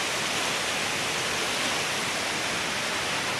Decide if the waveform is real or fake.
real